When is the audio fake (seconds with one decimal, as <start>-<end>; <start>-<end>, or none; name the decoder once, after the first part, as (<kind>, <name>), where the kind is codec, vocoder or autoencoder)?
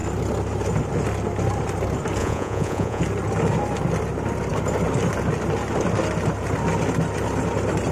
2.2-3.0 (vocoder, Vocos)